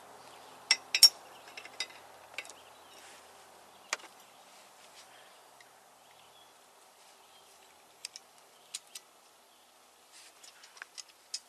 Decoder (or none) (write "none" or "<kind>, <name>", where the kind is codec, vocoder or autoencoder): none